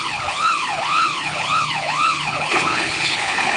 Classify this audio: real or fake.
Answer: fake